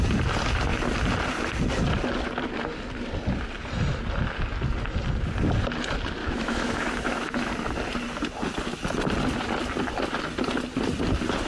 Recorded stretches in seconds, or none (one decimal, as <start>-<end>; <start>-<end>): 0.0-6.2; 7.5-11.5